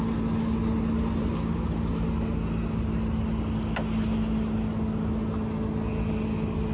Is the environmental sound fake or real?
real